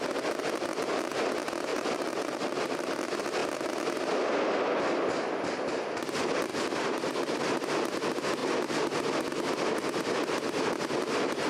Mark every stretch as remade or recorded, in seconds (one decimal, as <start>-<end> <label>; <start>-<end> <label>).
0.0-1.7 recorded; 1.7-3.0 remade; 3.0-6.5 recorded; 6.5-7.4 remade; 7.4-11.5 recorded